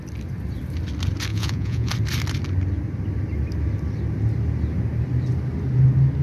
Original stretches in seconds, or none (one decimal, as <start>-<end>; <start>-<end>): 0.0-1.3; 1.9-6.2